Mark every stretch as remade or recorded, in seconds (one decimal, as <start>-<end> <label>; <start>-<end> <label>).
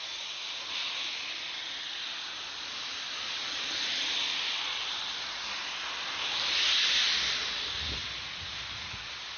0.0-9.4 recorded